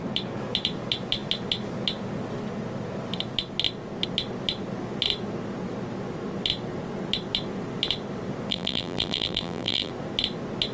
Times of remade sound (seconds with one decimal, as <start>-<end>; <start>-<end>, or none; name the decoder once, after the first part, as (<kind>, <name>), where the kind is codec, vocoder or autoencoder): 8.5-9.9 (vocoder, BigVGAN v2)